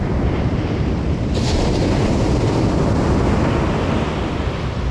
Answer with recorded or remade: recorded